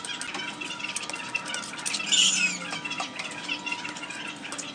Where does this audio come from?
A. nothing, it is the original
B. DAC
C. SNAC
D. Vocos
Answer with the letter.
A